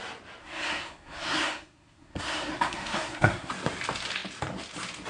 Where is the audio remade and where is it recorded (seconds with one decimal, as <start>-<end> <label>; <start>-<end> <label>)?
0.0-0.4 recorded; 0.4-3.5 remade; 3.5-5.1 recorded